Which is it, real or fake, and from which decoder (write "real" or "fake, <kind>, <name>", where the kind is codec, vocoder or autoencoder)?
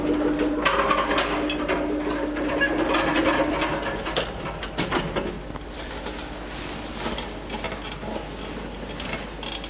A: real